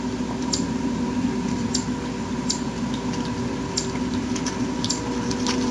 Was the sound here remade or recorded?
recorded